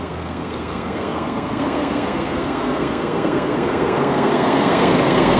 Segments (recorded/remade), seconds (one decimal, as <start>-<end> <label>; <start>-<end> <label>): 0.0-5.4 remade